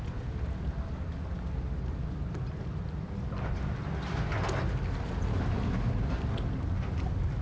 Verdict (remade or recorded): recorded